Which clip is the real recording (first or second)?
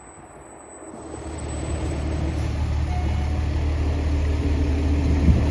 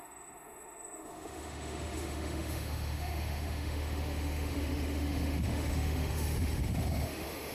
first